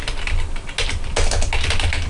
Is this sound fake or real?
real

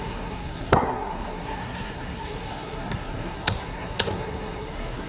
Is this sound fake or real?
fake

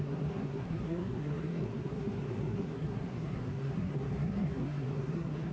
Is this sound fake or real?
fake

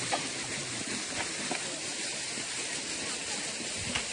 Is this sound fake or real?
real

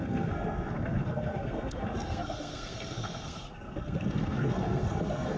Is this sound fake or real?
fake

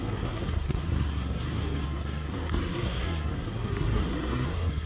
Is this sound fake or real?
fake